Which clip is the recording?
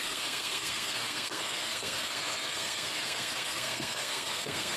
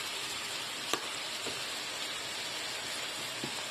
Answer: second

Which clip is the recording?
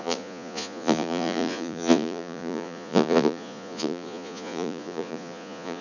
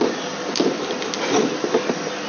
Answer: second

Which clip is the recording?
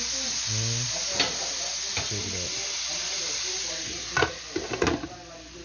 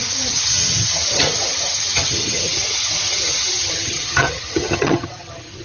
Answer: first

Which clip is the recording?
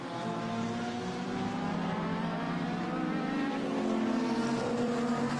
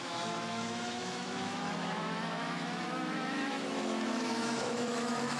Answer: first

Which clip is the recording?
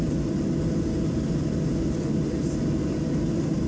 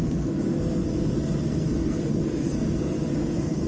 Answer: first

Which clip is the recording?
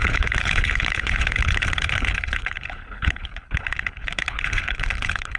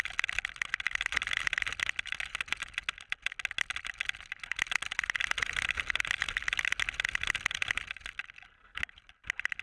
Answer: second